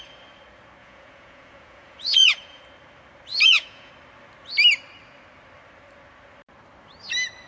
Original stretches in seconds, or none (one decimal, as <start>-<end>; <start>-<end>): 0.0-0.8; 2.6-3.3; 3.9-7.5